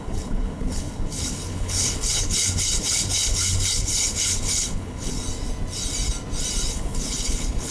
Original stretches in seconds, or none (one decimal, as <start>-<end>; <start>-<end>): 5.2-6.7